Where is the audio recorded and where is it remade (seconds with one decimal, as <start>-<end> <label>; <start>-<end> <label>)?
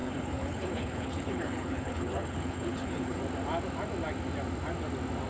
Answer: 0.0-3.2 remade; 3.2-5.3 recorded